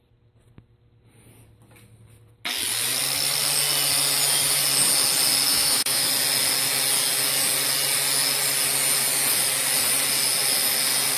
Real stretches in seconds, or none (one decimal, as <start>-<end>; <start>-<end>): 0.0-5.5; 6.1-11.2

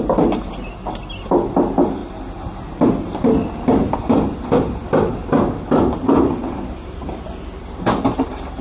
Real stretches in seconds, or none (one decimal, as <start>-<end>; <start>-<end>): 0.0-8.6

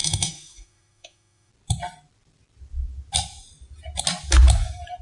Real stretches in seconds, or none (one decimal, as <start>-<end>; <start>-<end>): 1.5-5.0

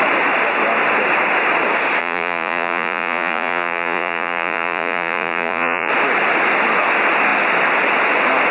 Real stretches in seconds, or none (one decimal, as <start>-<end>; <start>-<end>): 0.0-2.0; 5.9-8.5